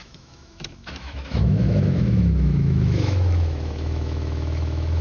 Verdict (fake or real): fake